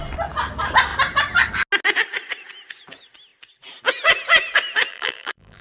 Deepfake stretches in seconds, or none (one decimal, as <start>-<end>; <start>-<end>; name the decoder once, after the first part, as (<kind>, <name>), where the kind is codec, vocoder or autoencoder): 4.9-5.6 (vocoder, BigVGAN v2)